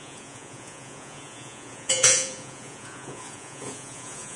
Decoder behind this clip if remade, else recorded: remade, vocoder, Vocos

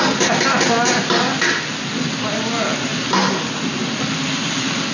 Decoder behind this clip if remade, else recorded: recorded